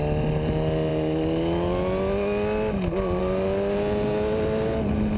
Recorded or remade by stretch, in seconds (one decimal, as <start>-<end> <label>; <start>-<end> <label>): 0.0-5.2 recorded